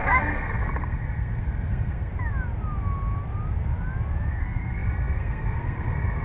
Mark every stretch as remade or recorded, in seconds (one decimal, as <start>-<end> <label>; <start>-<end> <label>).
0.0-2.1 remade; 2.1-4.3 recorded; 4.3-6.2 remade